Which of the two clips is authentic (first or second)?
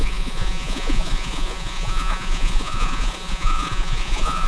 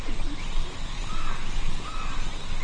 second